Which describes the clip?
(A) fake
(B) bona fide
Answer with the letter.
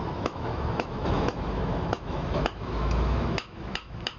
A